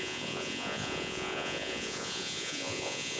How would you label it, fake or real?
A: fake